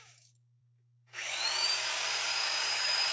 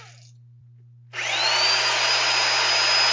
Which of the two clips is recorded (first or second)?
second